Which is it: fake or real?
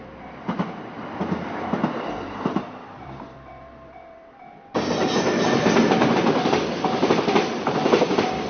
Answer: fake